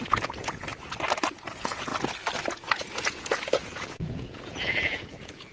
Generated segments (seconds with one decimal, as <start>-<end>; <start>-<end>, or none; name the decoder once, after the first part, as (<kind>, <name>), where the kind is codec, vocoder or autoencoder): 0.0-0.7 (vocoder, Vocos); 1.3-1.9; 2.4-5.5